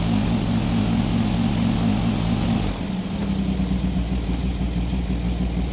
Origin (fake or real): real